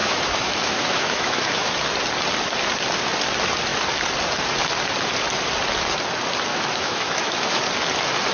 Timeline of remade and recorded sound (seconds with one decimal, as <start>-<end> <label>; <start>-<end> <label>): 0.0-1.7 remade; 1.7-6.5 recorded; 6.5-7.6 remade; 7.6-8.3 recorded